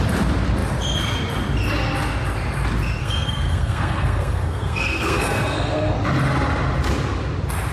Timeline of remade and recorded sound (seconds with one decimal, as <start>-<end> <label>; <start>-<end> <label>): 0.0-3.0 recorded; 3.0-5.9 remade; 5.9-7.7 recorded